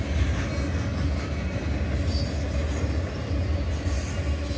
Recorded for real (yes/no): yes